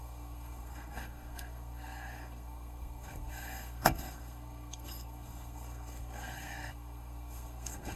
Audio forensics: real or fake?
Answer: fake